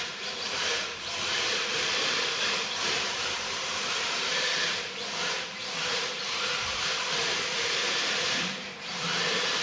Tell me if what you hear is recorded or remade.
remade